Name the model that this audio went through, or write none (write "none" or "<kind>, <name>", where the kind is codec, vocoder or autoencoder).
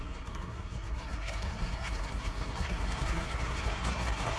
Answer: codec, SNAC